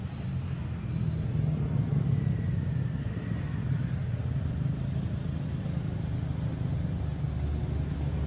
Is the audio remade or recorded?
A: recorded